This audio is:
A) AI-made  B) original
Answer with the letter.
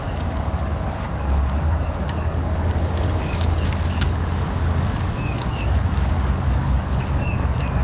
A